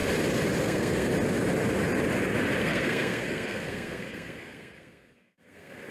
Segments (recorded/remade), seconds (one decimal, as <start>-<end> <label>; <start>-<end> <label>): 0.0-0.6 recorded; 0.6-1.1 remade; 1.1-2.6 recorded; 2.6-5.9 remade